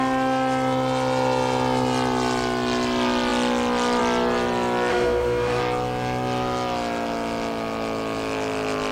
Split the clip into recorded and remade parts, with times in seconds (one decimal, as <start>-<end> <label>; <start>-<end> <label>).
0.0-4.9 recorded; 4.9-5.6 remade; 5.6-8.9 recorded